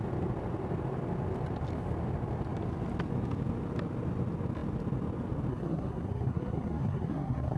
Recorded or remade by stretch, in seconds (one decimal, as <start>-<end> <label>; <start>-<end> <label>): 0.0-5.5 recorded; 5.5-7.6 remade